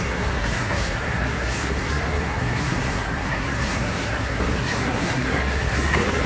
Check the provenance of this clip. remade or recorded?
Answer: remade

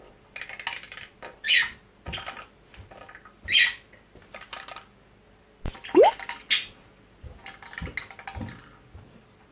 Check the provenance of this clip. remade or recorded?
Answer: recorded